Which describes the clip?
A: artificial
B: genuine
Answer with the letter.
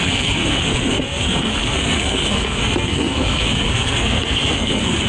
A